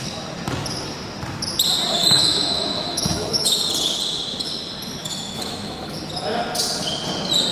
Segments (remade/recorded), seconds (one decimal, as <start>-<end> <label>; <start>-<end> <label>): 0.0-2.0 recorded; 2.0-3.6 remade; 3.6-5.0 recorded; 5.0-6.0 remade; 6.0-7.5 recorded